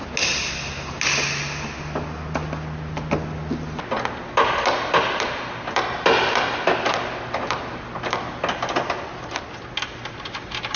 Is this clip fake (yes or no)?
no